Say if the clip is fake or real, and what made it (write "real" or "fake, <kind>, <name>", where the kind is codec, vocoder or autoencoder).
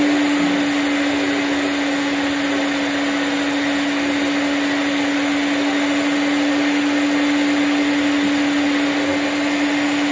real